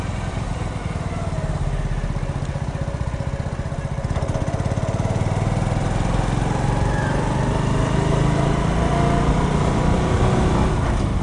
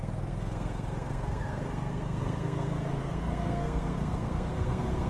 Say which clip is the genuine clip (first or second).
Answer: first